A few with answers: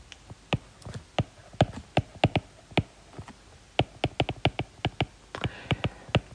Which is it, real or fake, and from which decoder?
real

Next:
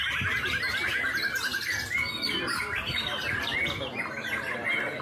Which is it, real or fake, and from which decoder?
real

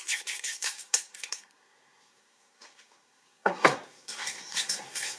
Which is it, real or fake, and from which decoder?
fake, codec, SNAC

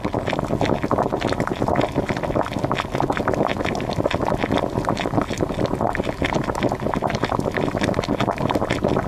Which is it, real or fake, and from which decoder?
real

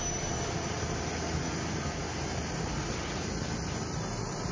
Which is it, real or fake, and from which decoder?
real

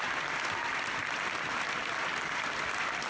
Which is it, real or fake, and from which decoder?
real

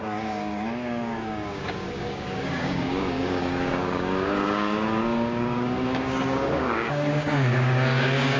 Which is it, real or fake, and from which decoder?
fake, codec, DAC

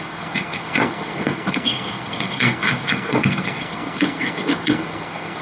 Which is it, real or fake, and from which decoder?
fake, codec, SNAC